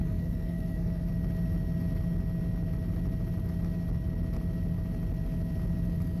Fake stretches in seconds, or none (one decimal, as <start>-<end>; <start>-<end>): 0.0-1.1